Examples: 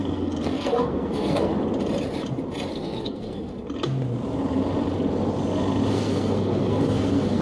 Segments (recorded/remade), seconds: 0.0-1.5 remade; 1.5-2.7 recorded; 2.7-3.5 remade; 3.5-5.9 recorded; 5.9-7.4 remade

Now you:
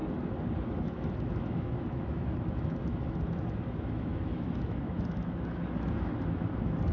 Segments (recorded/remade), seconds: 0.0-0.7 recorded; 0.7-6.9 remade

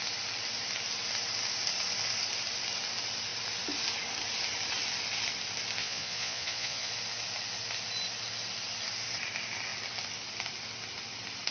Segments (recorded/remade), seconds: 0.0-5.8 recorded; 5.8-6.9 remade; 6.9-11.5 recorded

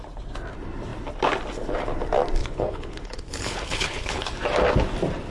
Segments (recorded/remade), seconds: 0.0-2.4 recorded; 2.4-4.3 remade; 4.3-5.3 recorded

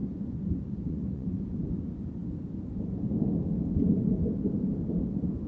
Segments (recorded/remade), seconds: 0.0-1.4 remade; 1.4-5.5 recorded

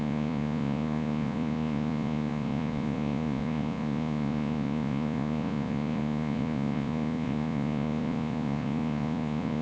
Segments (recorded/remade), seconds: 0.0-9.6 remade

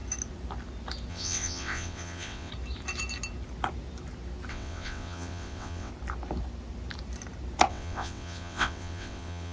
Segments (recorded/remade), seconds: 0.0-1.1 recorded; 1.1-2.5 remade; 2.5-4.5 recorded; 4.5-5.9 remade; 5.9-7.7 recorded; 7.7-9.5 remade